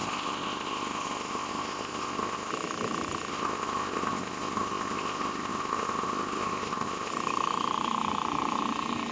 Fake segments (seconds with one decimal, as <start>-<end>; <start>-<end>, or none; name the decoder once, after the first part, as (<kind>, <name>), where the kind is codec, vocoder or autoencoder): 0.0-2.5 (codec, ZipCodec); 3.3-7.1